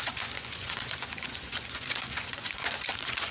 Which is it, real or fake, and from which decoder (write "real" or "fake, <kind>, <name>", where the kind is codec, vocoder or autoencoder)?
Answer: fake, vocoder, Vocos